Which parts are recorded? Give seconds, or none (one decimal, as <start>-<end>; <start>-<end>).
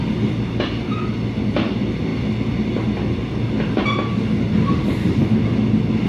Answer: 0.0-6.1